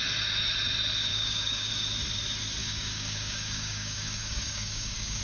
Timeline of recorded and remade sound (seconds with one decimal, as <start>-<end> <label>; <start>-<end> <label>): 0.0-1.1 recorded; 1.1-1.7 remade; 1.7-2.6 recorded; 2.6-5.2 remade